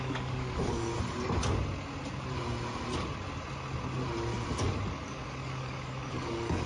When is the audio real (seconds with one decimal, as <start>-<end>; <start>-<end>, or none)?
0.9-4.9